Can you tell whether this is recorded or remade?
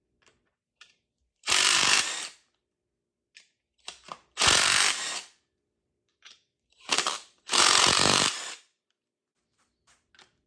remade